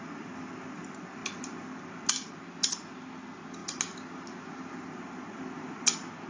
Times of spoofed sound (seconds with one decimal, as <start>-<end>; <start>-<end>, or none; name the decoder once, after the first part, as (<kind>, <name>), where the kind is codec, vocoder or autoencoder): none